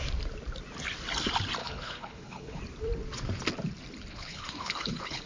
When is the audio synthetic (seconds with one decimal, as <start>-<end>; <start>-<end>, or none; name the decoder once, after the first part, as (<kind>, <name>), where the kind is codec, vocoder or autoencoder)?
1.6-2.6 (codec, HILCodec); 4.1-5.3